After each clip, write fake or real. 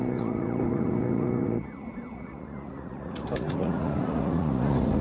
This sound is fake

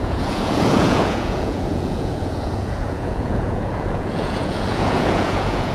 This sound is fake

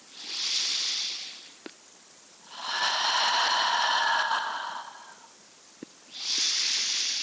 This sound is real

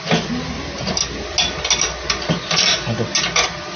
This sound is real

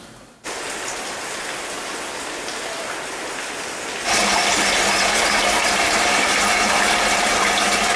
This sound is real